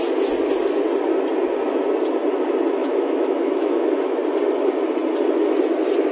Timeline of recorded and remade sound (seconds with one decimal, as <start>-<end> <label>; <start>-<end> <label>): 0.0-2.8 recorded; 2.8-4.2 remade; 4.2-6.1 recorded